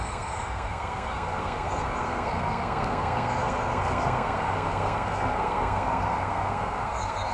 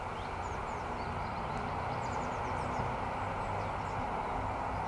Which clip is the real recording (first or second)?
second